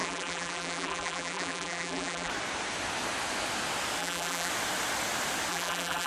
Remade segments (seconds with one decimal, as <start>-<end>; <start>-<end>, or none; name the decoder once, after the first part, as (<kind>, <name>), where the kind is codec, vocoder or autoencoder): 0.0-2.3 (vocoder, BigVGAN v2); 4.0-4.5; 5.5-6.1